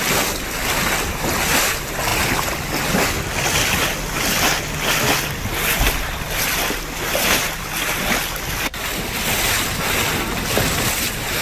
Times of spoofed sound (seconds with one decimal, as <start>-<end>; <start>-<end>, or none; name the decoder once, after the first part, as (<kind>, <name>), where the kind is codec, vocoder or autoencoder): none